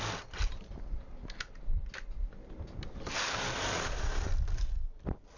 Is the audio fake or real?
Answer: real